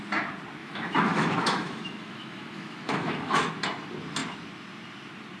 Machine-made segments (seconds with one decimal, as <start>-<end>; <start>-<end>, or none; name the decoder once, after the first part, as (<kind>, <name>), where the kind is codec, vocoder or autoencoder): 0.6-3.5 (autoencoder, DAC-VAE)